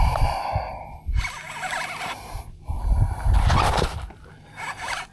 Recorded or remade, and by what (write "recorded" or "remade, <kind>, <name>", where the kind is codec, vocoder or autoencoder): recorded